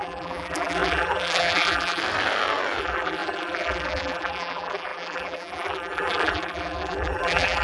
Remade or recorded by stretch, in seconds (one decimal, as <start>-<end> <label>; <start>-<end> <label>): 0.0-2.0 remade; 2.0-2.8 recorded; 2.8-7.6 remade